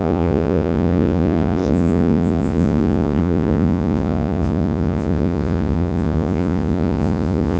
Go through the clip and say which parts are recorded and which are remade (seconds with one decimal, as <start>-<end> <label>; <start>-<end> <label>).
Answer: 0.0-7.6 remade